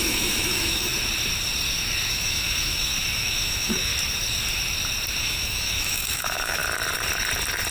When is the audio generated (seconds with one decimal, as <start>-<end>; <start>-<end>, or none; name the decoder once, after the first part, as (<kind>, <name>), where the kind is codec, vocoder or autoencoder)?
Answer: 0.0-0.9 (autoencoder, DAC-VAE); 2.1-3.9; 5.2-6.6